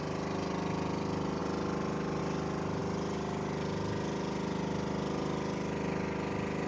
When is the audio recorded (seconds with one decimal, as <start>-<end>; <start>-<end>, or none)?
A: 0.0-6.7